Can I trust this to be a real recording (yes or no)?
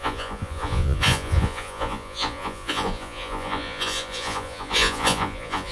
no